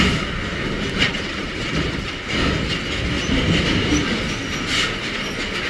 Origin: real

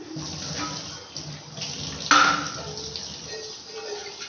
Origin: real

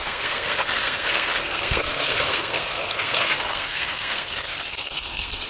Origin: fake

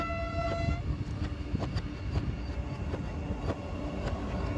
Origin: real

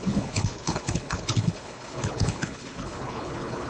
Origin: fake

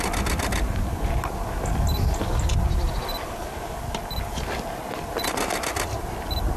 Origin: real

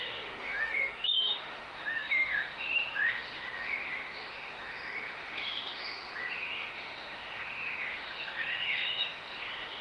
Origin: fake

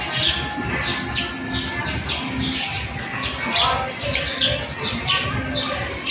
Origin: real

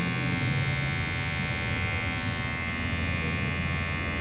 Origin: real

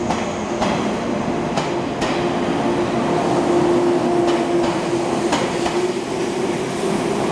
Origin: real